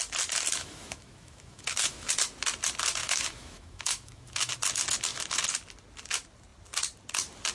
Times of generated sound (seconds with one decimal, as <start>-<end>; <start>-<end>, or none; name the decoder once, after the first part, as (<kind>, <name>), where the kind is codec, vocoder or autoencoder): 0.6-2.1 (autoencoder, DAC-VAE); 3.0-4.5